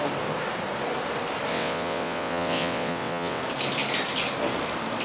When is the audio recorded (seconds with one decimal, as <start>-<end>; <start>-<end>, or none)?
0.0-1.5; 3.4-5.0